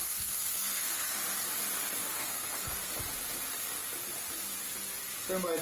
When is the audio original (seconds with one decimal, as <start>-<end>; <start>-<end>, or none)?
1.2-2.1; 2.9-5.6